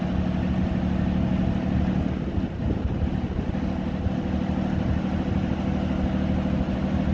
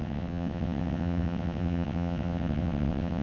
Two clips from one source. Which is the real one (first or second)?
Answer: first